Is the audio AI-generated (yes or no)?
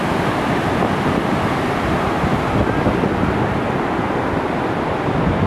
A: no